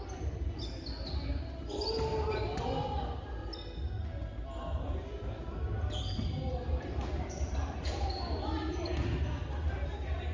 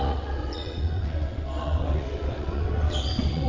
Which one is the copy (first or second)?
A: second